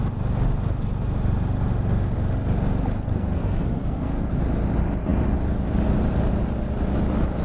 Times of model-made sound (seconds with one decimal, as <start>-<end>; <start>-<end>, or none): 3.1-4.4